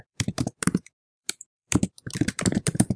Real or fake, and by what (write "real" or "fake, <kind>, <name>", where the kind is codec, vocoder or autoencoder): fake, vocoder, BigVGAN v2